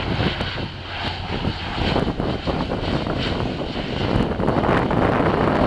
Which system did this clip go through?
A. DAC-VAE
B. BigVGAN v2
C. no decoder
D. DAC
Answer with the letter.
C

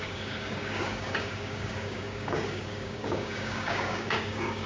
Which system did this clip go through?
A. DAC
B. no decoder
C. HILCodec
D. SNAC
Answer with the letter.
A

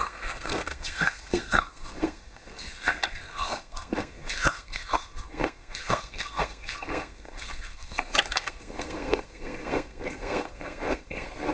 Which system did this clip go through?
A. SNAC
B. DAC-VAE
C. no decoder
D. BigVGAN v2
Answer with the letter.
A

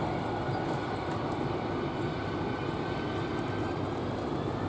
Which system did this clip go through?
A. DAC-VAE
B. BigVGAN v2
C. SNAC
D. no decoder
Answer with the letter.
D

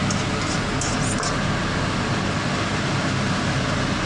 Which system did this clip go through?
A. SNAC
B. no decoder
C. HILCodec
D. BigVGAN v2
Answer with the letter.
B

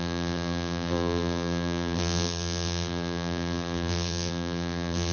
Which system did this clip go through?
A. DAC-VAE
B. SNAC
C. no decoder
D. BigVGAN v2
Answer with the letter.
D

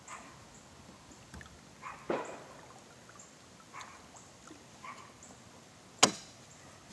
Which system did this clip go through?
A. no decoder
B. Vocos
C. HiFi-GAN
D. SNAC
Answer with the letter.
A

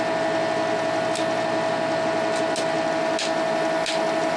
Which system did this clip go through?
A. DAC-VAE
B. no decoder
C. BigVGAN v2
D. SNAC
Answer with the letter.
B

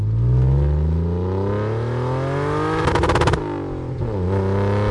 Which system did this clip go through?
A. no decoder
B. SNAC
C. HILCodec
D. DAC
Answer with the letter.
A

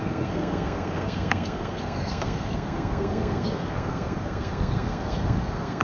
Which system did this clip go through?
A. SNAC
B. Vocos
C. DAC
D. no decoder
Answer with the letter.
A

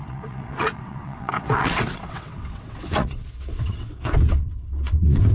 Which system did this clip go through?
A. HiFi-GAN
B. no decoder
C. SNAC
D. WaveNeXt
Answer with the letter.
D